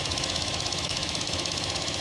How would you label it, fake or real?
fake